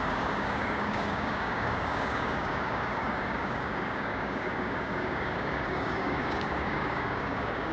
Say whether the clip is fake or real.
fake